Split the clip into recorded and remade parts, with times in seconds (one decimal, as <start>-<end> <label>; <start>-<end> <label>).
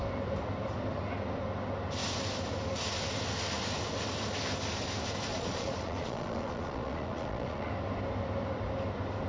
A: 0.0-5.3 recorded; 5.3-7.7 remade; 7.7-9.3 recorded